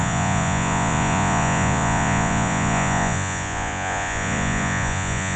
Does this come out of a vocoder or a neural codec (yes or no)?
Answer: yes